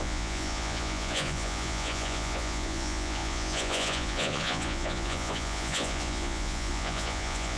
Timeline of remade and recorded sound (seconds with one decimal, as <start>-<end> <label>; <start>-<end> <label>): 0.0-7.6 remade